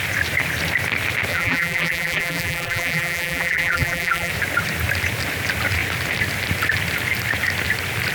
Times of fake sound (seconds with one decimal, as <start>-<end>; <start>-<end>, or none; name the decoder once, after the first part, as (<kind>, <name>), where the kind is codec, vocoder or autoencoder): 1.3-4.3 (vocoder, BigVGAN v2)